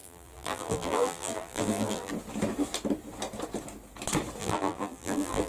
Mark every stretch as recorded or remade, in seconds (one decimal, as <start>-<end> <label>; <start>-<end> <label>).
0.0-2.1 remade; 2.1-4.4 recorded; 4.4-5.5 remade